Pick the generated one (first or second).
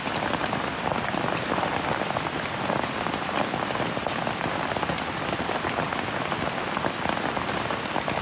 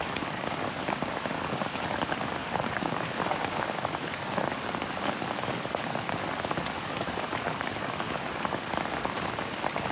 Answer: second